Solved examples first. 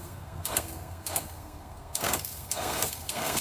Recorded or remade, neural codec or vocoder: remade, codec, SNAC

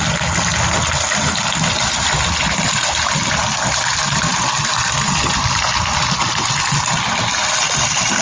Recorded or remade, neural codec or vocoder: recorded